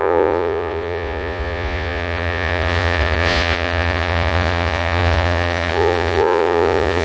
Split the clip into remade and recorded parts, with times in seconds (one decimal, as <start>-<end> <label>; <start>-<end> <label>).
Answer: 0.0-7.0 remade